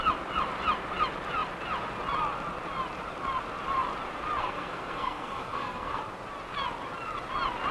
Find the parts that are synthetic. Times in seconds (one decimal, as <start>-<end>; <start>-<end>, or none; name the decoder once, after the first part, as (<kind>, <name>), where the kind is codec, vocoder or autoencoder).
4.4-6.0 (codec, SNAC)